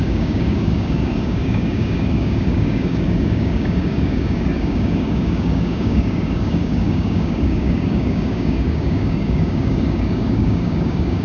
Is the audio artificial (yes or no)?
yes